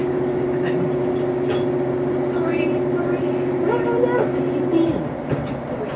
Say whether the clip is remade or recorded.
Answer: recorded